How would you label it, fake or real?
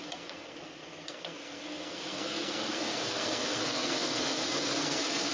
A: fake